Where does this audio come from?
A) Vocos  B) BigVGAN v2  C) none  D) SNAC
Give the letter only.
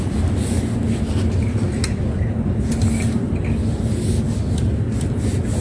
C